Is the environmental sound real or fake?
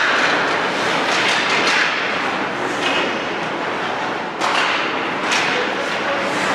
real